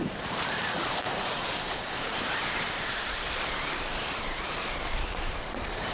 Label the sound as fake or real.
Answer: fake